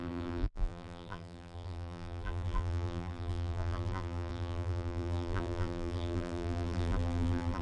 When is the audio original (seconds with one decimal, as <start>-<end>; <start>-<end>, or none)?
none